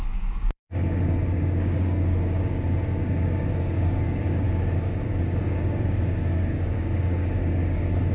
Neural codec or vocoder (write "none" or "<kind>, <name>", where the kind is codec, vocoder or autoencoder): codec, DAC